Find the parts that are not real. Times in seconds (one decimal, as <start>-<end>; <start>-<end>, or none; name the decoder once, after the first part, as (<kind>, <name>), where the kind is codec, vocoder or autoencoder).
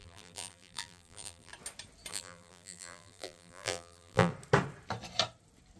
0.0-1.5 (vocoder, BigVGAN v2); 2.1-4.3